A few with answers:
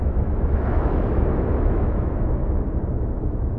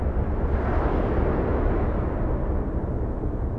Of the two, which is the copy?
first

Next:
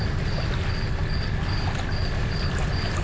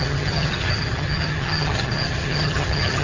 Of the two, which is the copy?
second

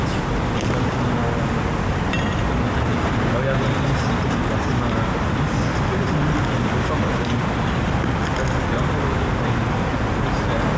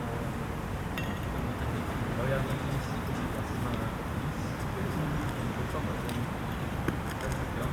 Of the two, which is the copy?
second